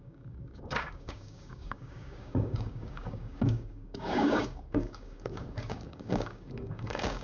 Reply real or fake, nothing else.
fake